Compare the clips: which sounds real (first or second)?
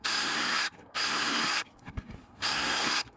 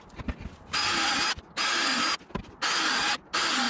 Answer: second